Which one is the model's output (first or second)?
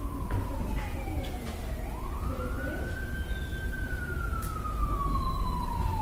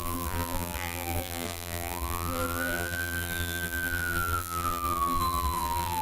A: second